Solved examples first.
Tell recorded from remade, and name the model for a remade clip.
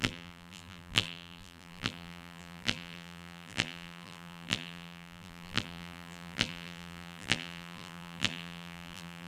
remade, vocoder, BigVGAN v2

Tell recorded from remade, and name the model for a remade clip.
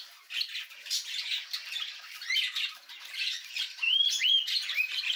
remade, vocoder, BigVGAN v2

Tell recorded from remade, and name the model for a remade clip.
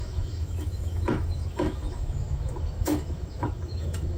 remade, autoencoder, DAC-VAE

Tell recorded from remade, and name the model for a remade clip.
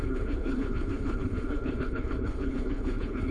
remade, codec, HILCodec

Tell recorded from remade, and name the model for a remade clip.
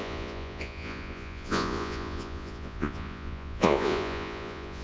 remade, vocoder, Vocos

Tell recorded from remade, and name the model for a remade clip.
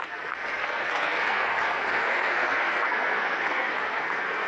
remade, codec, SNAC